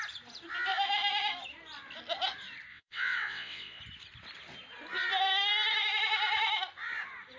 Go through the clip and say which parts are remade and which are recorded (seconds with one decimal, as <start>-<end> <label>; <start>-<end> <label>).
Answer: 0.0-2.7 recorded; 2.7-3.8 remade; 3.8-7.4 recorded